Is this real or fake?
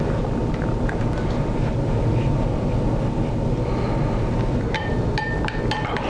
real